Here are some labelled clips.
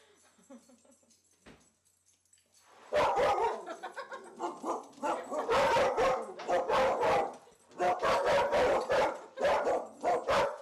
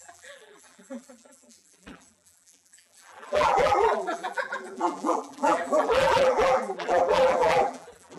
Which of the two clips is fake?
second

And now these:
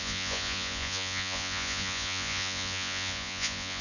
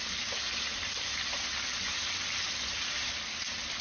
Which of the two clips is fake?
first